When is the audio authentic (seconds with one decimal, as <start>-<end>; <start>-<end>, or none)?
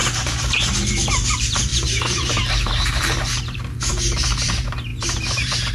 none